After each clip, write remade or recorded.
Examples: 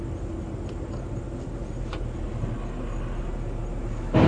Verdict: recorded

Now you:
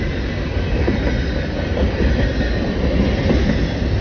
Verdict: recorded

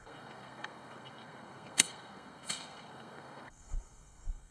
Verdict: remade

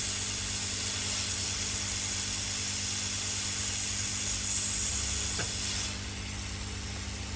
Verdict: recorded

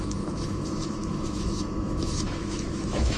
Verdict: remade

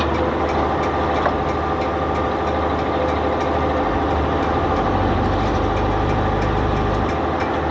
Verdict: recorded